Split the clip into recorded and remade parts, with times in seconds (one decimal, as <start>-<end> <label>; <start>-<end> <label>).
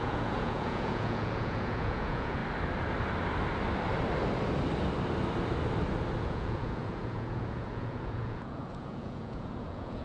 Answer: 0.0-2.4 remade; 2.4-6.2 recorded; 6.2-10.0 remade